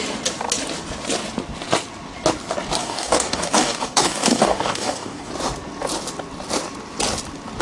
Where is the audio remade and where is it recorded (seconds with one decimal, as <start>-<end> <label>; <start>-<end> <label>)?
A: 0.0-2.8 recorded; 2.8-5.3 remade; 5.3-7.6 recorded